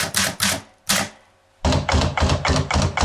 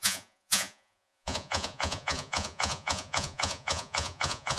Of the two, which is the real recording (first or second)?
first